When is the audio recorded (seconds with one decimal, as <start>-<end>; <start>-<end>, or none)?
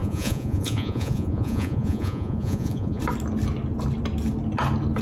3.0-5.0